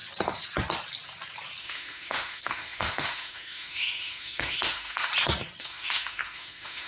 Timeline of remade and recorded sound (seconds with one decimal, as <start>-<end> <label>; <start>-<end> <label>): 0.0-1.6 recorded; 1.6-5.1 remade; 5.1-5.6 recorded; 5.6-6.9 remade